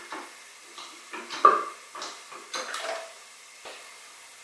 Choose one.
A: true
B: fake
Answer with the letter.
A